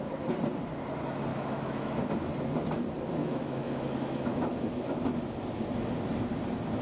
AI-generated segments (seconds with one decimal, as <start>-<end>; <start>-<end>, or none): 1.3-2.1; 3.2-4.9

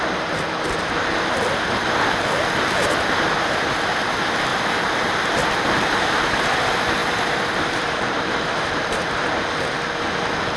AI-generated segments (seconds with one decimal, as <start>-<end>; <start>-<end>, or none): 4.5-5.1; 7.0-9.4